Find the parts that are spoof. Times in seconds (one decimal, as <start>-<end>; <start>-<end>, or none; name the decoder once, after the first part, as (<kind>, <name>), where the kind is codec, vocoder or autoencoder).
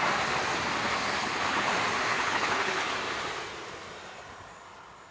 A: 1.2-1.7 (codec, HILCodec); 2.1-2.9